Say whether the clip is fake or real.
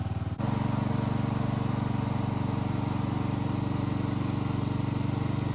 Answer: real